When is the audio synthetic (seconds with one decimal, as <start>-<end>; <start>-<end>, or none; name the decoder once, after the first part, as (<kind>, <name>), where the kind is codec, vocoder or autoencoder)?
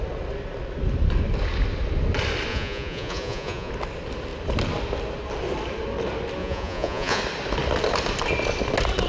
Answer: 2.5-3.7 (vocoder, Vocos); 6.4-7.2